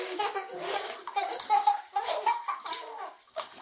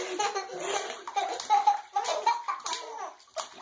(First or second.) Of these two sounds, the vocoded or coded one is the first